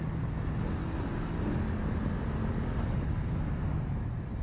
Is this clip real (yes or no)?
yes